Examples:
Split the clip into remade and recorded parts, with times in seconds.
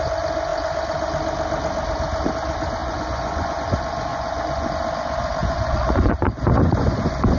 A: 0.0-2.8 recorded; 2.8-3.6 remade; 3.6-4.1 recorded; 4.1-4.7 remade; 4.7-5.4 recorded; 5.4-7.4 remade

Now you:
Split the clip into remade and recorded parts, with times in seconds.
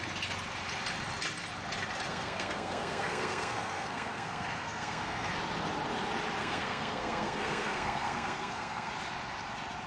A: 0.0-2.1 recorded; 2.1-5.3 remade; 5.3-6.4 recorded; 6.4-8.9 remade; 8.9-9.9 recorded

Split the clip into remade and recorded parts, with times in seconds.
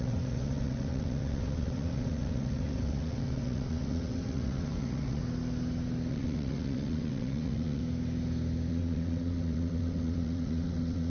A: 0.0-5.2 remade; 5.2-6.1 recorded; 6.1-7.8 remade; 7.8-8.7 recorded; 8.7-11.1 remade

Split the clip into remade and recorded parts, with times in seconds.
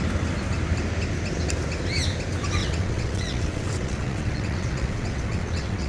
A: 0.0-2.6 recorded; 2.6-5.9 remade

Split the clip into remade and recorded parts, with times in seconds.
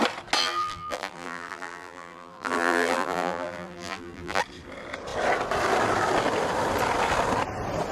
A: 0.0-0.4 recorded; 0.4-4.4 remade; 4.4-7.9 recorded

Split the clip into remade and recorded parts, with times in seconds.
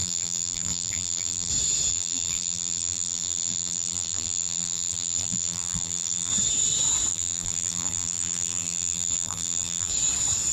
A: 0.0-1.5 remade; 1.5-1.9 recorded; 1.9-6.3 remade; 6.3-7.1 recorded; 7.1-9.9 remade; 9.9-10.5 recorded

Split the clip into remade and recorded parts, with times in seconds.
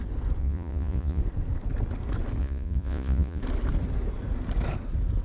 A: 0.0-0.4 recorded; 0.4-1.2 remade; 1.2-2.4 recorded; 2.4-3.4 remade; 3.4-5.2 recorded